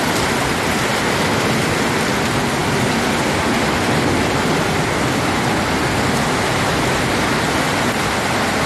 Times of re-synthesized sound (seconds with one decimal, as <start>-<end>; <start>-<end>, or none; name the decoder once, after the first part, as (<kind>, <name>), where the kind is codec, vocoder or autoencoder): none

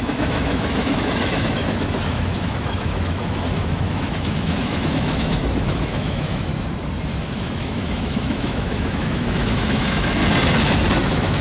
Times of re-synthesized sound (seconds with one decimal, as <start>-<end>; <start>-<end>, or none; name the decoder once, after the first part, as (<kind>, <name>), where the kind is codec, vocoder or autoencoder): 0.0-6.5 (autoencoder, DAC-VAE); 7.2-10.2; 11.0-11.4

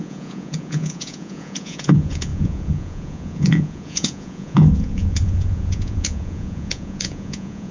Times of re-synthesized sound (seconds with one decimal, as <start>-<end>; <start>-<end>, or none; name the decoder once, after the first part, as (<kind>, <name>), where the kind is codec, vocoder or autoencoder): 0.0-7.7 (vocoder, Vocos)

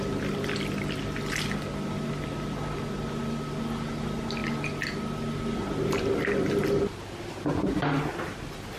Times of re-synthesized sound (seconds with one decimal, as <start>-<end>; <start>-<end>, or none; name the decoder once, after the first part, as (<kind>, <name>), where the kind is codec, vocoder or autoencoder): 4.4-7.1 (vocoder, BigVGAN v2)

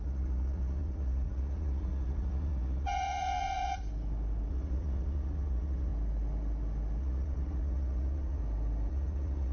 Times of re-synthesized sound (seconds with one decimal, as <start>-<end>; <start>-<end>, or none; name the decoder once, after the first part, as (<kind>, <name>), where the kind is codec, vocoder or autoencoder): 0.0-3.8 (vocoder, Vocos); 4.5-5.9; 7.0-8.4; 8.9-9.5